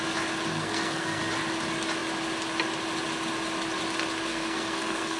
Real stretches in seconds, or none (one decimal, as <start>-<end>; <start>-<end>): 0.0-0.5; 1.2-4.3